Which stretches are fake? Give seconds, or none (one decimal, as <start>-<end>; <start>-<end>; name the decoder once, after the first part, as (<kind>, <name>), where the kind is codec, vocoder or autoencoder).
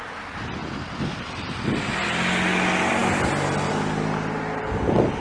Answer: none